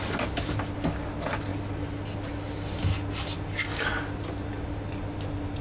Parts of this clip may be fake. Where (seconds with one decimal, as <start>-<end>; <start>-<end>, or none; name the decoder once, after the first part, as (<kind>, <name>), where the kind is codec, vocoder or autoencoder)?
none